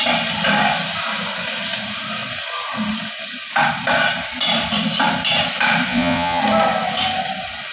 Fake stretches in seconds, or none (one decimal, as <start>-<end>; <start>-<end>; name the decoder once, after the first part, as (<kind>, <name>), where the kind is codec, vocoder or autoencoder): 5.9-6.4 (vocoder, Vocos)